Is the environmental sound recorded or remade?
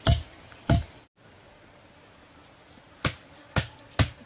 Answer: recorded